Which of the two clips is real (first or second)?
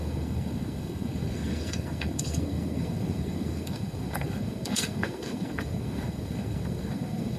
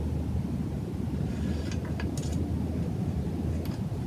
second